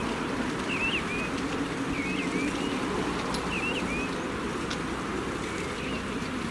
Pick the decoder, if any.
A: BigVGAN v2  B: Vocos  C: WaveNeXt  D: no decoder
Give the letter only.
D